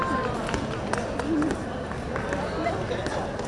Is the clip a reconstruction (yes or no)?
no